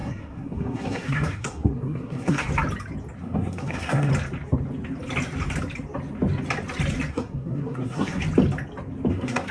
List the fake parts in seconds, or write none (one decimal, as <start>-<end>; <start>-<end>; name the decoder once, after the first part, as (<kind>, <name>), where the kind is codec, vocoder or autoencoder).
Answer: 0.0-2.5 (codec, SNAC); 3.2-4.1; 7.1-8.2; 9.1-9.5